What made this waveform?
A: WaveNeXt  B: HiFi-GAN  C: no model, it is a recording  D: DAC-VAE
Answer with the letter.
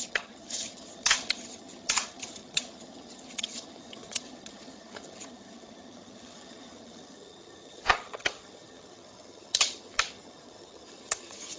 B